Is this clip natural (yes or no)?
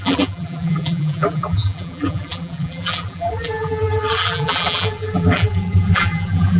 no